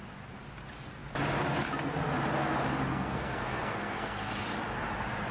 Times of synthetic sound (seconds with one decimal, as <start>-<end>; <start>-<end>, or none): 2.9-4.3